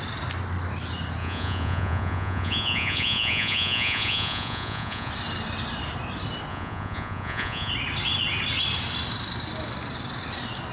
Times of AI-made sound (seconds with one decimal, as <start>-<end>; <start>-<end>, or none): 1.2-5.1; 6.5-7.7